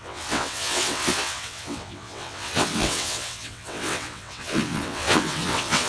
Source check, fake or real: fake